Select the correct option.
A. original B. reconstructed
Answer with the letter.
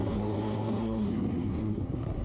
B